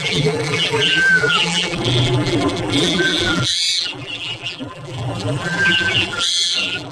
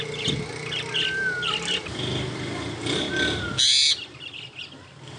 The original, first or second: second